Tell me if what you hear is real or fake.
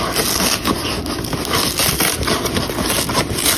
real